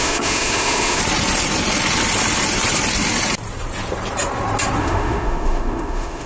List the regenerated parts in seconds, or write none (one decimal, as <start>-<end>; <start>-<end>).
0.0-1.0; 4.8-6.3